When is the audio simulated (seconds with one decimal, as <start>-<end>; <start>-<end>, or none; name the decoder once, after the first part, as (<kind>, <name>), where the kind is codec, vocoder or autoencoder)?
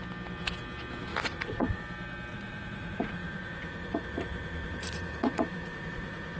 1.1-1.8 (vocoder, Vocos); 2.3-6.4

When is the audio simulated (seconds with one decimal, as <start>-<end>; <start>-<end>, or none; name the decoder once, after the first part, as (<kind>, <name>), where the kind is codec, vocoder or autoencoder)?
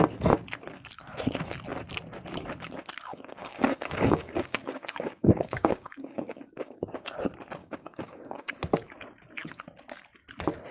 3.1-7.1 (codec, DAC); 7.6-8.5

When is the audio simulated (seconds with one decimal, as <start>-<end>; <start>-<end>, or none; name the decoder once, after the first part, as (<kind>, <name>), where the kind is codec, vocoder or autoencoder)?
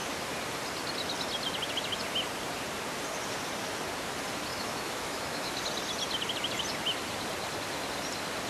4.5-5.6 (autoencoder, DAC-VAE)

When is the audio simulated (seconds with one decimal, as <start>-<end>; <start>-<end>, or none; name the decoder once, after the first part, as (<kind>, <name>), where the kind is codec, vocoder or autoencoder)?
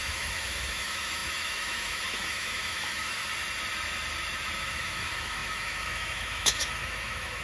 0.0-3.2 (autoencoder, DAC-VAE); 4.6-7.4